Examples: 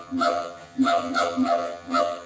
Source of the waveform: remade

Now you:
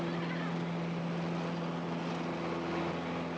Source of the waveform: recorded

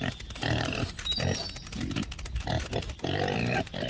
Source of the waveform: recorded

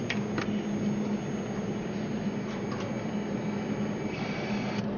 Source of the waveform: recorded